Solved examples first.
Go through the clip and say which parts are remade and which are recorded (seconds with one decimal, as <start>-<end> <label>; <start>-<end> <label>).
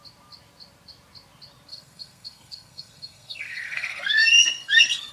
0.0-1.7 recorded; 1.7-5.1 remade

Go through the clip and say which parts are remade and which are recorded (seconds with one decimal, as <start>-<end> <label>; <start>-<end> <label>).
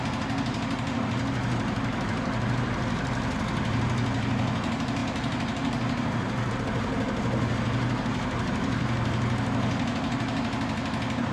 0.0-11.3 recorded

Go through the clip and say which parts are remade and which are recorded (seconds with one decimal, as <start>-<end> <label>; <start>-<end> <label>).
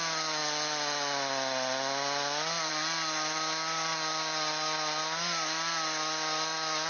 0.0-6.9 recorded